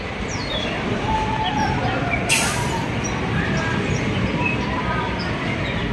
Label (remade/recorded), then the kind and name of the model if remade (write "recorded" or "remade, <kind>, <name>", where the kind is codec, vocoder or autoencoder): remade, vocoder, BigVGAN v2